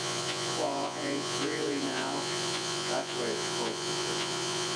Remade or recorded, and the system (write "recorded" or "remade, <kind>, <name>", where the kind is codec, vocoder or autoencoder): remade, vocoder, Vocos